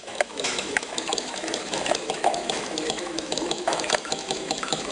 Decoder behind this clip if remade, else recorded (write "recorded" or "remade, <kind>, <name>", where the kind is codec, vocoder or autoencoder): remade, autoencoder, DAC-VAE